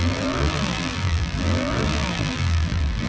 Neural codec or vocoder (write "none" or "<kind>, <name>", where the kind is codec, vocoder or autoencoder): vocoder, BigVGAN v2